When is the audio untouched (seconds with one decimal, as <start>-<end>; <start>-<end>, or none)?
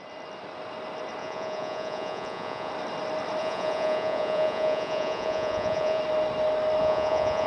0.0-1.2; 2.7-3.4; 6.0-6.8